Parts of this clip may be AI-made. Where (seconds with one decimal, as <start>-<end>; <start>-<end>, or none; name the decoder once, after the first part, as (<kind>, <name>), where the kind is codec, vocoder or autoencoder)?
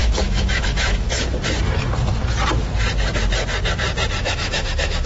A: 0.0-1.1 (autoencoder, DAC-VAE); 4.2-5.1